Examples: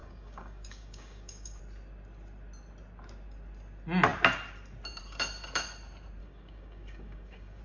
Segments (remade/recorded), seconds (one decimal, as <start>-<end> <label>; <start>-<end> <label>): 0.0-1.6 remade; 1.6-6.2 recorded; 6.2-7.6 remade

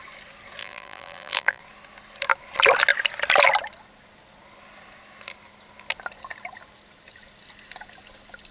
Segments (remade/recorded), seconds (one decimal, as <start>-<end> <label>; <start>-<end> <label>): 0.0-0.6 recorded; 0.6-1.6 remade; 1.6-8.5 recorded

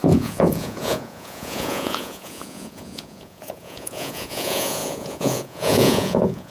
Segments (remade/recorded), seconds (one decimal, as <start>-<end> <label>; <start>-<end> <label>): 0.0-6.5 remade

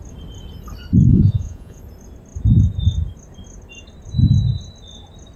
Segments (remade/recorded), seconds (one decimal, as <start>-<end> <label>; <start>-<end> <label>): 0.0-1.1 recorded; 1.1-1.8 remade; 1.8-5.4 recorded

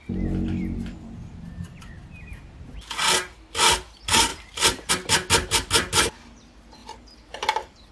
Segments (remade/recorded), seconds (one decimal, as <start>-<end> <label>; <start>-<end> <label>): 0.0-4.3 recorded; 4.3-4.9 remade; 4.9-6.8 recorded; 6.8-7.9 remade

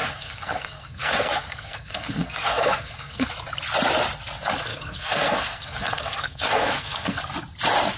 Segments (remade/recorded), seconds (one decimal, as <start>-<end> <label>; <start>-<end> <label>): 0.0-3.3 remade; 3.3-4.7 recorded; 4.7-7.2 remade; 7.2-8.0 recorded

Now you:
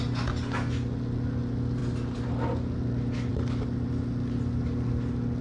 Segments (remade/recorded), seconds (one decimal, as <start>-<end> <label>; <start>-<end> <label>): 0.0-5.4 recorded

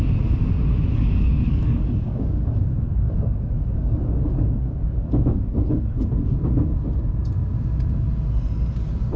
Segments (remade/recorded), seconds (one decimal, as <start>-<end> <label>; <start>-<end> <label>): 0.0-0.9 recorded; 0.9-6.1 remade; 6.1-9.2 recorded